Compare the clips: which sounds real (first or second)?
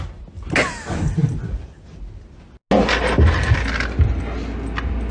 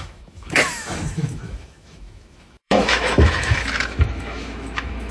first